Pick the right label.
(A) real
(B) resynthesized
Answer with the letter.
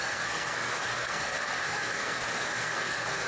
B